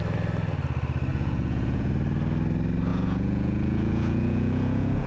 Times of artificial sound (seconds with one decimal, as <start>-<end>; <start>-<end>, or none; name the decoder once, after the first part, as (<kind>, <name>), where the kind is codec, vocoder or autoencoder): 1.1-1.9 (vocoder, Vocos); 2.9-5.1